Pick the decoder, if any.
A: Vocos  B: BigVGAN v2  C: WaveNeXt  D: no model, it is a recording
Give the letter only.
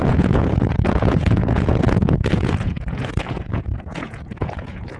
A